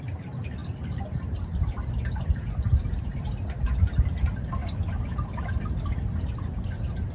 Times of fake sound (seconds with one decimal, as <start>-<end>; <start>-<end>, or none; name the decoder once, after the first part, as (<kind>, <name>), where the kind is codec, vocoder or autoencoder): 0.6-3.2 (vocoder, BigVGAN v2)